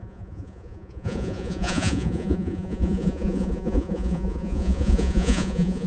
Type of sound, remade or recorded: remade